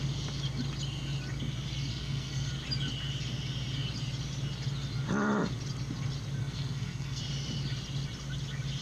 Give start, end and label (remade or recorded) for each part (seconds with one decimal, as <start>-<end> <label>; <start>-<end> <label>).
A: 0.0-1.9 recorded; 1.9-2.5 remade; 2.5-6.4 recorded; 6.4-7.2 remade; 7.2-8.8 recorded